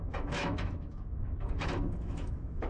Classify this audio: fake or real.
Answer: fake